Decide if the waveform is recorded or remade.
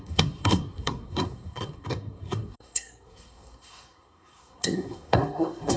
remade